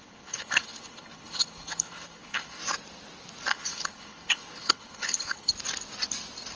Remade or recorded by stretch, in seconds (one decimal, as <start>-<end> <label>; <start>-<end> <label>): 0.0-2.6 remade; 2.6-3.5 recorded; 3.5-5.5 remade; 5.5-6.6 recorded

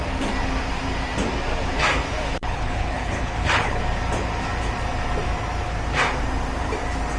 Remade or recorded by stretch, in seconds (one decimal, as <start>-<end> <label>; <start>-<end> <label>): 0.0-2.4 recorded; 2.4-3.8 remade; 3.8-7.2 recorded

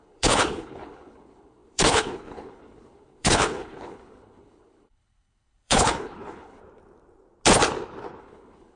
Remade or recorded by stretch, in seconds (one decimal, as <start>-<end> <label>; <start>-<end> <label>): 0.0-6.6 remade; 6.6-8.2 recorded; 8.2-8.8 remade